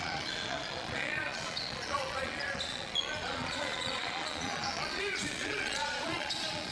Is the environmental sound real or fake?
fake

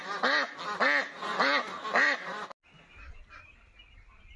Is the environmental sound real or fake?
real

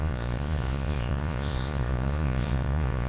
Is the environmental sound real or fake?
fake